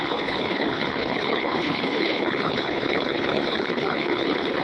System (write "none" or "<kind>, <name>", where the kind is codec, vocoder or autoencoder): codec, HILCodec